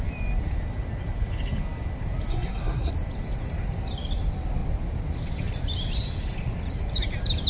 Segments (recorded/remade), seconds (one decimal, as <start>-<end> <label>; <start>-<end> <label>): 0.0-2.3 recorded; 2.3-2.9 remade; 2.9-7.5 recorded